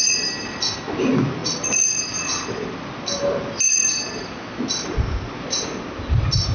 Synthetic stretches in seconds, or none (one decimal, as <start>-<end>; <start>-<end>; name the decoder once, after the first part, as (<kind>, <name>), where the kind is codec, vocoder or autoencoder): none